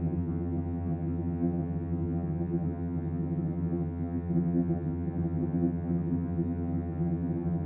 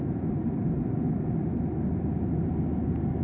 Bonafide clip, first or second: second